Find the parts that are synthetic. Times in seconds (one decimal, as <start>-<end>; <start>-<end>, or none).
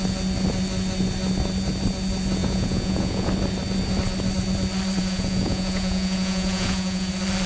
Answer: 2.4-3.3; 5.0-7.1